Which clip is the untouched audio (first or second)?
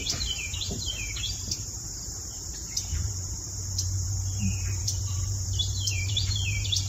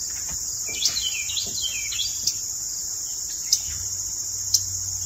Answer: second